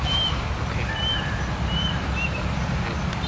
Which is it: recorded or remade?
recorded